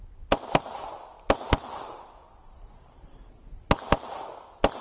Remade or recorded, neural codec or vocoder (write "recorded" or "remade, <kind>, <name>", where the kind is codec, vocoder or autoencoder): recorded